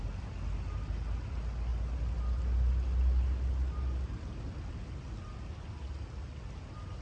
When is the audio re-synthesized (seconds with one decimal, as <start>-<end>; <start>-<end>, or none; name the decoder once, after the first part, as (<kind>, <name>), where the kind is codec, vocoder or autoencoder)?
none